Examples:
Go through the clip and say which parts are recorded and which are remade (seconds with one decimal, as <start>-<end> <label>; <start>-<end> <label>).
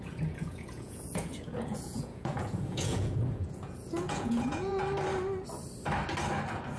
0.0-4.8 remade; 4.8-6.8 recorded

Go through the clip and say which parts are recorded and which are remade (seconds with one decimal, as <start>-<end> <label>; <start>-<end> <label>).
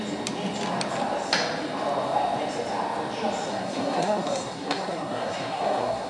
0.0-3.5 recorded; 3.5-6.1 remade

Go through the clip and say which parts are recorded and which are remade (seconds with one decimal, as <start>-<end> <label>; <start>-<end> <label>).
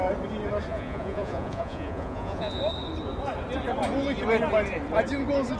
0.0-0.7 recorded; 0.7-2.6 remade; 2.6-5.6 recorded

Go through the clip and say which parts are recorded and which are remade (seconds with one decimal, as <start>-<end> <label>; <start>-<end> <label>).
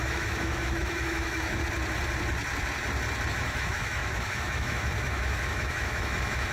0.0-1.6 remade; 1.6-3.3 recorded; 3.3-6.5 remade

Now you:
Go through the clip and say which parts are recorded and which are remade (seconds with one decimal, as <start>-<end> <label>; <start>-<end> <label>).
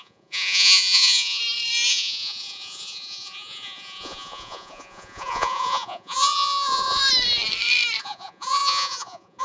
0.0-1.4 remade; 1.4-1.9 recorded; 1.9-7.0 remade; 7.0-8.0 recorded; 8.0-9.4 remade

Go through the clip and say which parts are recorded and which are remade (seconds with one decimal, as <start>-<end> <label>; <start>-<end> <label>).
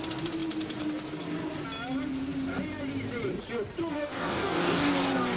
0.0-3.9 recorded; 3.9-4.9 remade; 4.9-5.4 recorded